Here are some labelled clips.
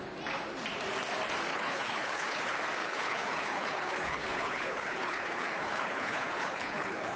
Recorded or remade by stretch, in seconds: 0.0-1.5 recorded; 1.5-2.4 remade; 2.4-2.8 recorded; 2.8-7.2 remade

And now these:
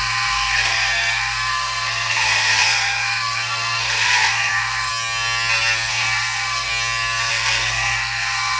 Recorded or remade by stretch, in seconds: 0.0-4.9 remade; 4.9-5.9 recorded; 5.9-6.7 remade; 6.7-7.3 recorded; 7.3-8.6 remade

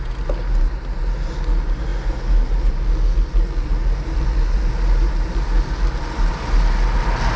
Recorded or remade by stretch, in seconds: 0.0-7.4 recorded

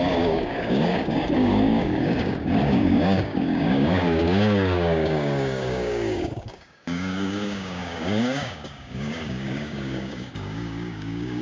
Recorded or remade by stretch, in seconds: 0.0-11.4 remade

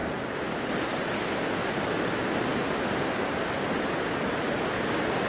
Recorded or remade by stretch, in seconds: 0.0-5.3 recorded

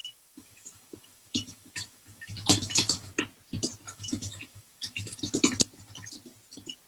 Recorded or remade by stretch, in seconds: 0.0-3.1 remade; 3.1-3.9 recorded; 3.9-5.3 remade; 5.3-6.9 recorded